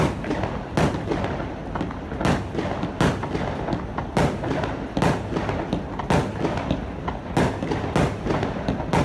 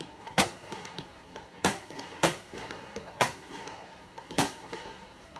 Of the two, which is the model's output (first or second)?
second